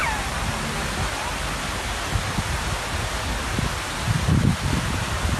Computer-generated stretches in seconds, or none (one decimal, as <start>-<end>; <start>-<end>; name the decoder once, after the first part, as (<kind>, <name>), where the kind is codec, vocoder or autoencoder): none